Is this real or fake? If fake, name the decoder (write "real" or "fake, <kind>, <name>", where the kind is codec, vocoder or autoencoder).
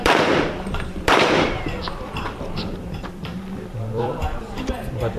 fake, vocoder, BigVGAN v2